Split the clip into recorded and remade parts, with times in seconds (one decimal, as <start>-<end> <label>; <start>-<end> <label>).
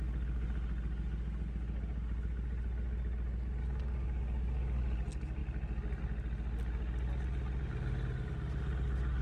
0.0-3.6 recorded; 3.6-4.8 remade; 4.8-9.2 recorded